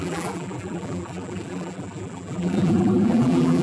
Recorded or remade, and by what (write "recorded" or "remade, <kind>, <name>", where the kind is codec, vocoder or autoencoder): remade, vocoder, BigVGAN v2